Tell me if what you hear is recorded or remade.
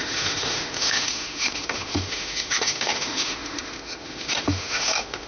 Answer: remade